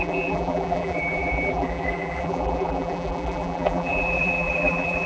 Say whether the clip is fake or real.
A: fake